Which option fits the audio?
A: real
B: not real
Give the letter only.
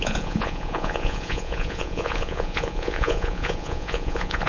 B